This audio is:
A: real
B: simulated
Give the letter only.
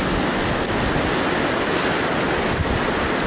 A